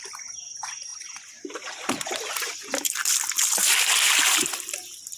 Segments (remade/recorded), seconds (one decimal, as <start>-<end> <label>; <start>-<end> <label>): 0.0-3.0 remade; 3.0-3.7 recorded; 3.7-5.2 remade